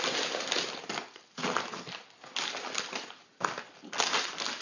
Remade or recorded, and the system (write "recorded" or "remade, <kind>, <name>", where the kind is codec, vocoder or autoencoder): recorded